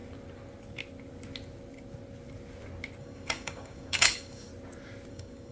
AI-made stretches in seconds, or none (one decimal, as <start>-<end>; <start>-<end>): 3.0-4.5; 5.1-5.5